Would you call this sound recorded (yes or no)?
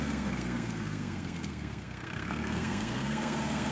no